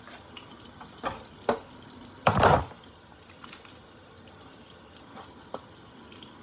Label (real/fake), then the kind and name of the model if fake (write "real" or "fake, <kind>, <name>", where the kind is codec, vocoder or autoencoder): real